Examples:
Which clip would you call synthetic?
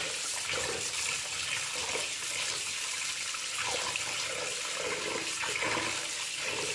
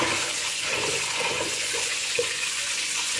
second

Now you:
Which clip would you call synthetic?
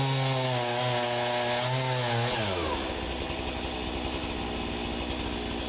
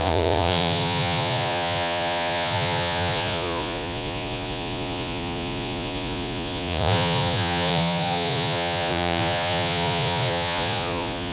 second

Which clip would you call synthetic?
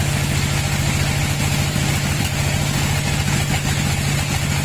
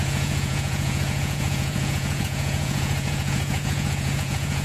second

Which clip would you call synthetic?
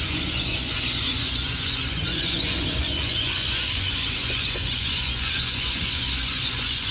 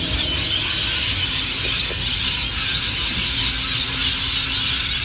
first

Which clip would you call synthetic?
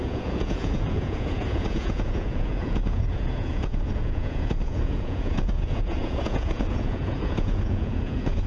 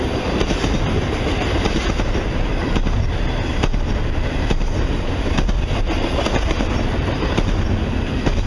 first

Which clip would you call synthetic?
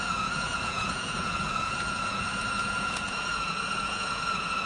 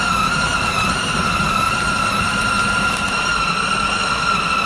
first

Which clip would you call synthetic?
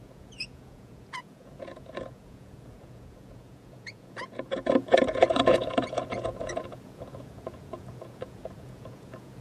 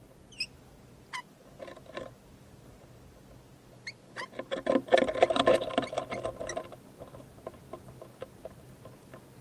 first